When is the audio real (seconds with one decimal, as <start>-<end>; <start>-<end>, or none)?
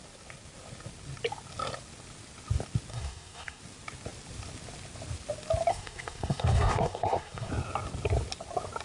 0.0-2.9; 3.6-5.7; 7.5-8.8